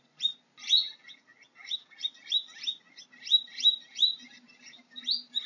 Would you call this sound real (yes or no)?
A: yes